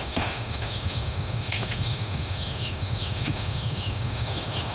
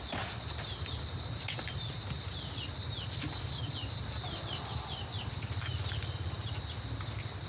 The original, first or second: second